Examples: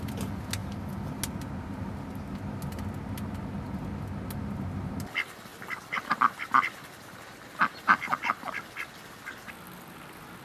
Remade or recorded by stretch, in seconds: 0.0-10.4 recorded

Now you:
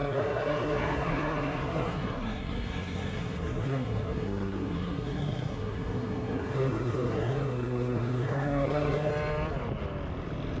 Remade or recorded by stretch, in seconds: 0.0-9.1 remade; 9.1-10.6 recorded

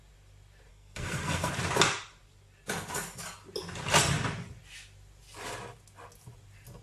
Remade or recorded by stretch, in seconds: 0.0-0.7 recorded; 0.7-1.5 remade; 1.5-6.8 recorded

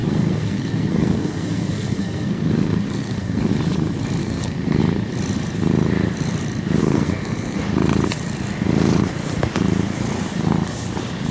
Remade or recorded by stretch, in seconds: 0.0-3.5 remade; 3.5-4.2 recorded; 4.2-4.8 remade; 4.8-6.8 recorded; 6.8-7.6 remade; 7.6-11.3 recorded

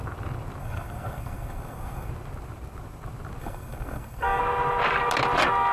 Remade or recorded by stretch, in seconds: 0.0-0.6 recorded; 0.6-2.1 remade; 2.1-3.4 recorded; 3.4-4.4 remade; 4.4-5.7 recorded